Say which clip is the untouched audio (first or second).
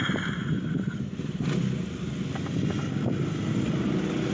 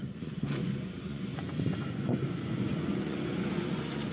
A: first